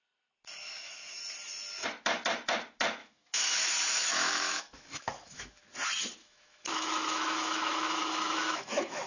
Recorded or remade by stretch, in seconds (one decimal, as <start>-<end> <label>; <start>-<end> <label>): 0.0-0.6 recorded; 0.6-1.2 remade; 1.2-3.0 recorded; 3.0-5.6 remade; 5.6-6.2 recorded; 6.2-9.1 remade